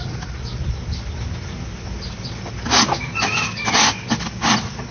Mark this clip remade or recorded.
recorded